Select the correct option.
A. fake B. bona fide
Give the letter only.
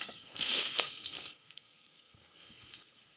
A